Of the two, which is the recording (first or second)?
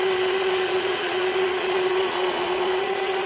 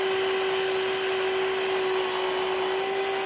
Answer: second